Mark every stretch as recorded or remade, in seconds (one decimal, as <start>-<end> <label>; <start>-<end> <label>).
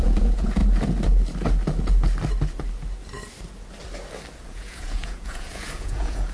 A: 0.0-0.6 remade; 0.6-4.4 recorded; 4.4-6.3 remade